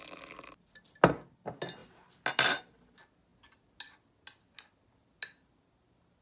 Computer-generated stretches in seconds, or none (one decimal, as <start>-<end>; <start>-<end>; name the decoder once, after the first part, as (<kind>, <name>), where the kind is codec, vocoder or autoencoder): none